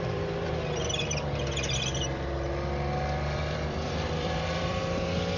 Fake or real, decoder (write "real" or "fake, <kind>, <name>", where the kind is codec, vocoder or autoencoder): fake, vocoder, BigVGAN v2